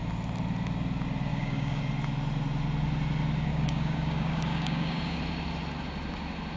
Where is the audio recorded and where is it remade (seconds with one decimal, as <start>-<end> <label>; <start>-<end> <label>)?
0.0-1.3 recorded; 1.3-1.8 remade; 1.8-3.5 recorded; 3.5-5.2 remade; 5.2-6.6 recorded